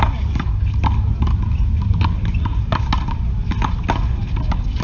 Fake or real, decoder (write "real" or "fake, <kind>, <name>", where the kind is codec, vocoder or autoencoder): real